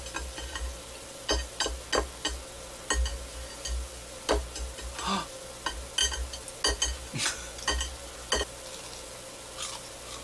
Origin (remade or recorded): recorded